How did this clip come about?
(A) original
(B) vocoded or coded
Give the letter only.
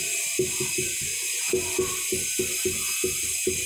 A